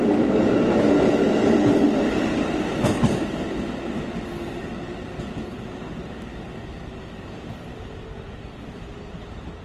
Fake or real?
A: real